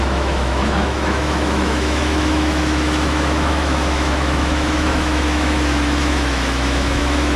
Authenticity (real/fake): fake